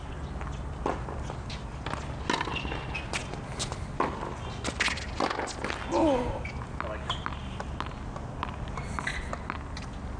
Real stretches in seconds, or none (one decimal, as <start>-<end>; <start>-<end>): 0.0-10.2